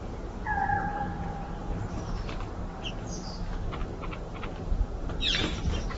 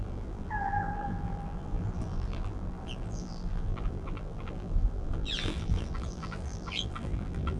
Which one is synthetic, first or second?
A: second